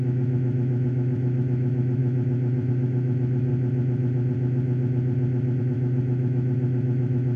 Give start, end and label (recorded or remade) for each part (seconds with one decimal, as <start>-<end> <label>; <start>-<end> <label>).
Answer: 0.0-3.5 remade; 3.5-5.6 recorded; 5.6-7.4 remade